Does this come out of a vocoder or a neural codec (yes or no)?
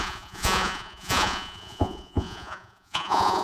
yes